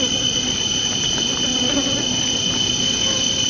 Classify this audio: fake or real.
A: real